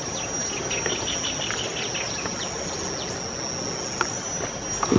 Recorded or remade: recorded